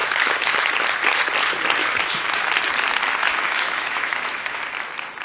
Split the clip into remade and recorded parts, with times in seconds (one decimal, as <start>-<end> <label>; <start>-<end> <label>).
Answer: 0.0-0.7 remade; 0.7-1.8 recorded; 1.8-2.5 remade; 2.5-3.2 recorded; 3.2-4.6 remade; 4.6-5.2 recorded